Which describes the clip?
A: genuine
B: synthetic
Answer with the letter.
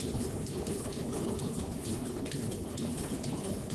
B